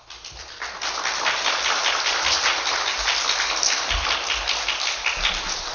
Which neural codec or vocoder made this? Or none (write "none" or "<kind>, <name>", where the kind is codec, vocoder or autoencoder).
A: none